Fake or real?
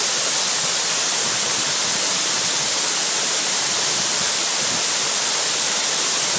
fake